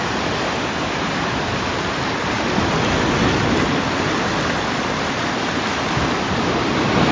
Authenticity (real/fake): real